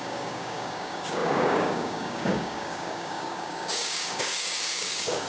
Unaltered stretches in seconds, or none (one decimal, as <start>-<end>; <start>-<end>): none